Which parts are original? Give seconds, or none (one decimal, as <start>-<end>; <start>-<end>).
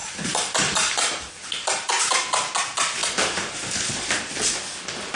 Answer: 1.3-3.0; 4.1-5.2